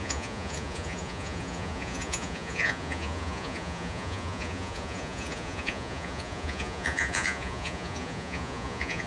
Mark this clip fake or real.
fake